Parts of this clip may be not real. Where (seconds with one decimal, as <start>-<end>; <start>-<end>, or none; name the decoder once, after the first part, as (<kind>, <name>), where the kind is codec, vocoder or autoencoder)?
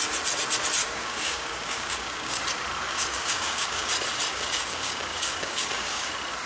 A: 0.8-2.4 (codec, DAC); 2.8-3.9; 4.3-6.1